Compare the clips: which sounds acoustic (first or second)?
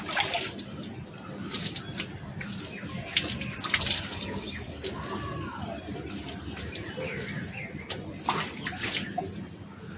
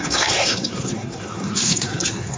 first